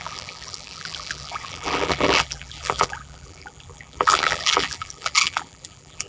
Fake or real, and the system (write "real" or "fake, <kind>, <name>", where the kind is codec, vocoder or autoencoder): fake, vocoder, BigVGAN v2